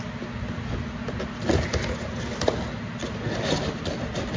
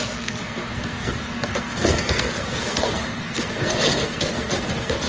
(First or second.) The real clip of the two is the first